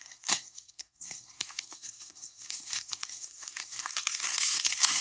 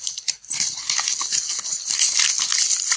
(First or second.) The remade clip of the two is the first